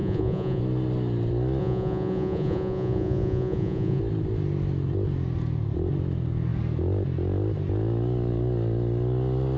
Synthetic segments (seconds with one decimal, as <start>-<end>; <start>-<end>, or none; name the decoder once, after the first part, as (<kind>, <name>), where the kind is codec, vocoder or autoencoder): 0.0-0.6 (vocoder, Vocos); 1.6-4.0